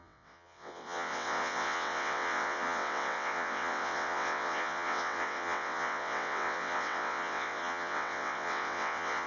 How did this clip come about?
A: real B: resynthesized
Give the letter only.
B